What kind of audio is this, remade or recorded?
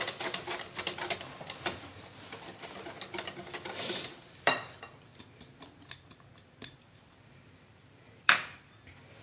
remade